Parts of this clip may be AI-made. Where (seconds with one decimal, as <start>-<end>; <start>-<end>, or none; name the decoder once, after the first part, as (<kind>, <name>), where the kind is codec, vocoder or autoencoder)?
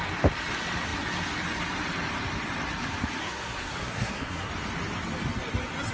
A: 3.2-4.5 (codec, SNAC)